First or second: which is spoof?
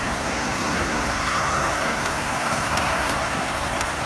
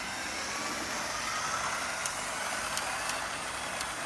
first